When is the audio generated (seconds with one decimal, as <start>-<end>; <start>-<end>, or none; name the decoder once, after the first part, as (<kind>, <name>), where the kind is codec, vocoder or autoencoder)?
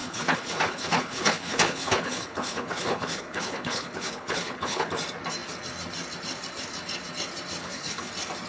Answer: 0.0-4.9 (codec, HILCodec); 7.6-8.1